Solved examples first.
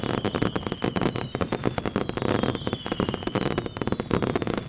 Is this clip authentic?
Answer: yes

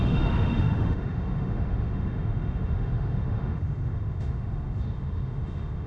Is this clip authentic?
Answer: no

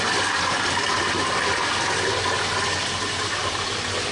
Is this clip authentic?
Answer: yes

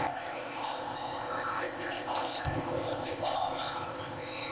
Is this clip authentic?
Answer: no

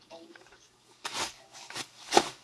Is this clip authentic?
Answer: no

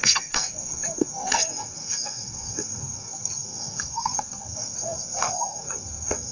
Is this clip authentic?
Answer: no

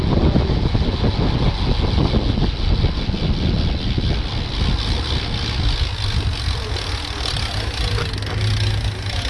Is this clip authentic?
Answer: yes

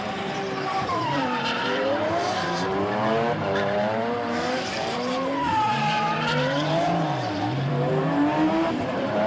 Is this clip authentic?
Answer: no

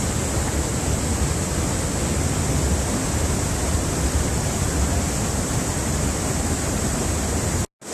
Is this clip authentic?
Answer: yes